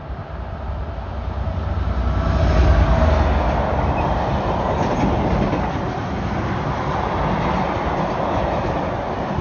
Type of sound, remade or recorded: recorded